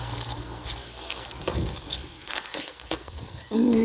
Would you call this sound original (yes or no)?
no